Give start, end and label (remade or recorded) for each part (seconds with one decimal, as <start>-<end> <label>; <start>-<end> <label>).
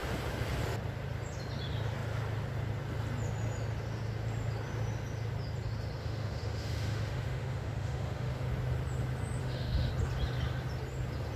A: 0.0-6.0 recorded; 6.0-8.5 remade; 8.5-9.4 recorded; 9.4-9.9 remade; 9.9-11.4 recorded